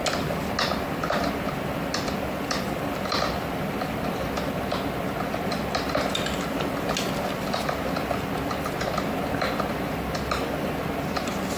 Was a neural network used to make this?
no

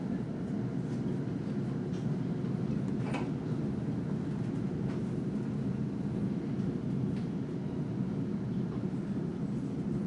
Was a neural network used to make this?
no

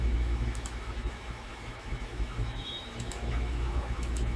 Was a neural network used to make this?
yes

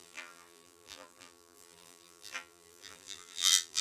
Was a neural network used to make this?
yes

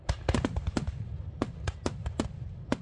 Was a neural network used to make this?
no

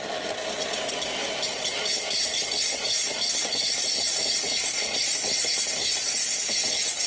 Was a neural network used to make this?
no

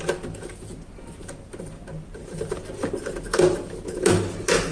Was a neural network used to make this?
no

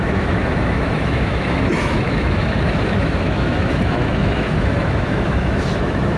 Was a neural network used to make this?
yes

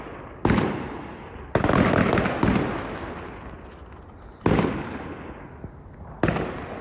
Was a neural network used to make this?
no